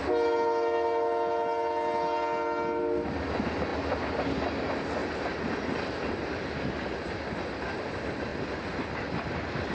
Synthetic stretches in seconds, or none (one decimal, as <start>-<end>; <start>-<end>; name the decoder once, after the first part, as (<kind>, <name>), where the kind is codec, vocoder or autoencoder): none